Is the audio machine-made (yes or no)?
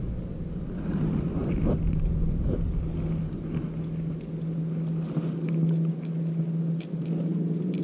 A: no